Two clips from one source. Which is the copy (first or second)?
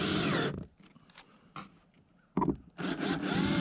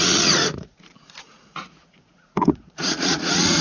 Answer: second